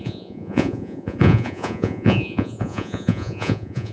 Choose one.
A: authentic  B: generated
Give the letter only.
B